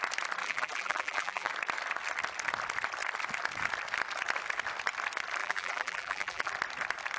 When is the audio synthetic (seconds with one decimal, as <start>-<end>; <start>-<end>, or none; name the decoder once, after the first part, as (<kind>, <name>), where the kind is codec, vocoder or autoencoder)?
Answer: 0.4-1.5 (vocoder, BigVGAN v2); 5.4-6.5